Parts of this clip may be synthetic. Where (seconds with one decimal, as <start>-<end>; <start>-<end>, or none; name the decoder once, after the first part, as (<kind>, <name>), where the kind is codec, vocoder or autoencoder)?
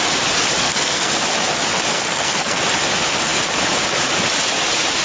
0.6-1.1 (codec, SNAC); 1.9-2.6